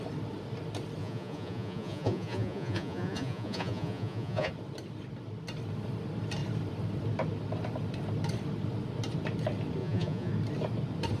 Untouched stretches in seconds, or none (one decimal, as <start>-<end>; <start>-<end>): 0.0-1.0; 4.5-9.8; 10.3-11.2